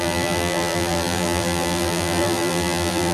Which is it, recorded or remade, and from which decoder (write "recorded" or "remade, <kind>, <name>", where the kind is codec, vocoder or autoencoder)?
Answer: remade, vocoder, BigVGAN v2